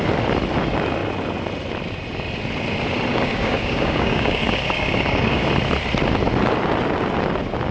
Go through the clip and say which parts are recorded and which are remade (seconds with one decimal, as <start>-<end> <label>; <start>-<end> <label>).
0.0-3.1 recorded; 3.1-5.5 remade; 5.5-7.7 recorded